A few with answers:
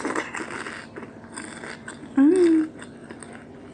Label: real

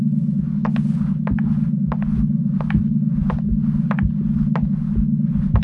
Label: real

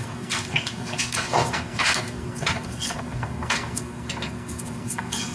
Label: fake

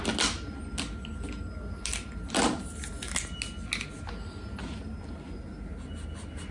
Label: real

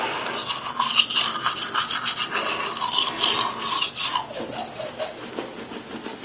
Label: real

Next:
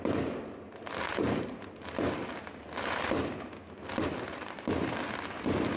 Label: real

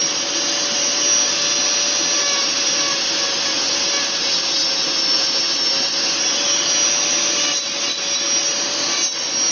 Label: real